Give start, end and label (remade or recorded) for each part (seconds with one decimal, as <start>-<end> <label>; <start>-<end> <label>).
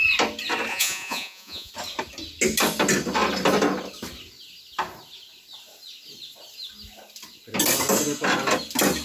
0.0-0.7 recorded; 0.7-1.7 remade; 1.7-9.0 recorded